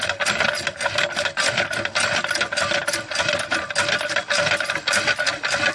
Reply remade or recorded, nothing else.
recorded